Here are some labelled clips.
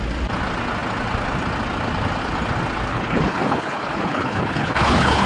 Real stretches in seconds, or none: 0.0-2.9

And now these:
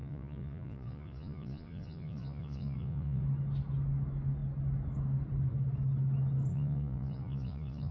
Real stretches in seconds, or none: 3.2-6.5

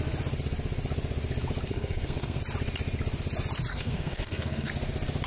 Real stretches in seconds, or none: 0.0-1.7; 2.4-3.7; 4.7-5.3

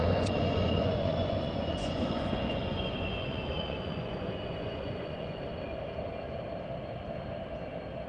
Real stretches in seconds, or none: 5.5-8.1

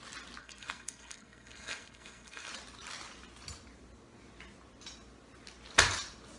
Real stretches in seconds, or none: 0.0-0.4; 2.5-6.4

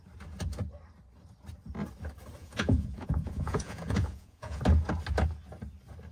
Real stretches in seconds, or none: 0.0-2.4; 4.6-6.1

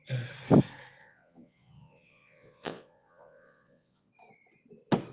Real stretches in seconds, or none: 0.0-1.0; 4.1-5.1

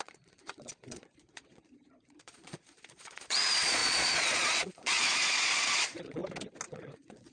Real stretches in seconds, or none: 6.2-6.7